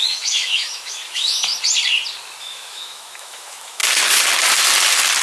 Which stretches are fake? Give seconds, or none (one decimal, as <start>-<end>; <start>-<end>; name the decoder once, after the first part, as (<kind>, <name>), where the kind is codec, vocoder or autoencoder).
0.0-1.5 (autoencoder, DAC-VAE); 2.4-3.8